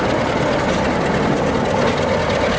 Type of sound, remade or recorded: recorded